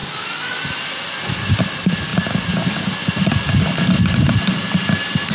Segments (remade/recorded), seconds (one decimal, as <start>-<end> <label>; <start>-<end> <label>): 0.0-5.3 recorded